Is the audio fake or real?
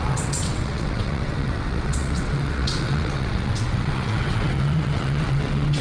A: fake